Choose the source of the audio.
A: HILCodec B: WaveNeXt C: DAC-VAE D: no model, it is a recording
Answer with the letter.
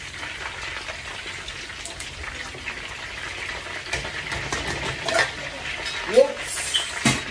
D